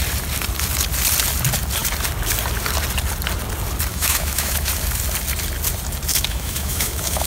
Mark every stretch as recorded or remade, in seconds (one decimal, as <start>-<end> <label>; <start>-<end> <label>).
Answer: 0.0-3.9 recorded; 3.9-4.7 remade; 4.7-6.1 recorded; 6.1-7.3 remade